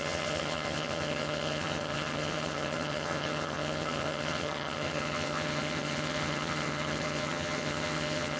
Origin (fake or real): fake